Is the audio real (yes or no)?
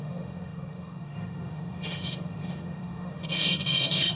no